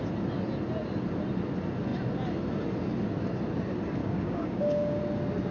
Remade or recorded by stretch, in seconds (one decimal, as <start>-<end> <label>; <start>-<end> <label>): 0.0-4.0 recorded; 4.0-5.0 remade; 5.0-5.5 recorded